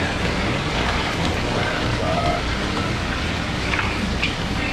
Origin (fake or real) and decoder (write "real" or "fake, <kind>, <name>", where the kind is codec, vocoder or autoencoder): fake, codec, DAC